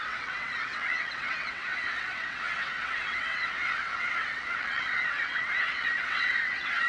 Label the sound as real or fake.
fake